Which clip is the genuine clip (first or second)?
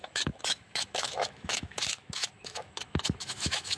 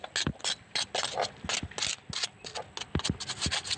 second